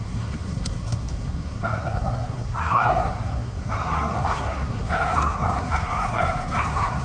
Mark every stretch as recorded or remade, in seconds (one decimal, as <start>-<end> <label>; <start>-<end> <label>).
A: 0.0-7.0 remade